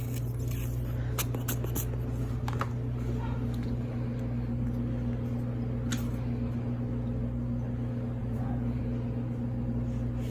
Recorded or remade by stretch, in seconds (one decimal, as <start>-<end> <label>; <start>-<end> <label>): 0.0-8.2 recorded; 8.2-8.8 remade; 8.8-10.3 recorded